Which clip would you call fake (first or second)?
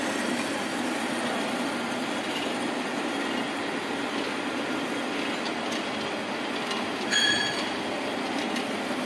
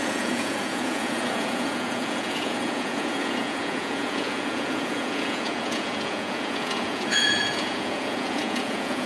second